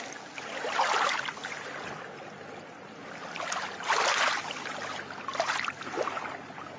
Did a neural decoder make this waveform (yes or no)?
no